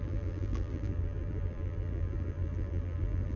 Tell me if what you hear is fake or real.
fake